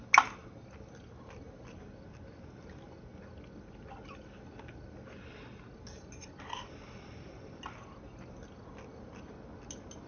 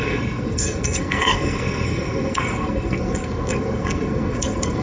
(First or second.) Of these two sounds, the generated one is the second